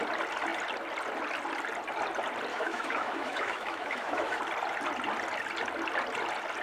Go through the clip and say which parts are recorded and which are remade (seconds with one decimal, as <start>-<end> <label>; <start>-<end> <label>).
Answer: 0.0-2.5 recorded; 2.5-4.4 remade; 4.4-6.6 recorded